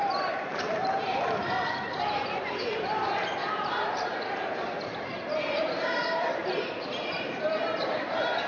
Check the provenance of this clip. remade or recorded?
remade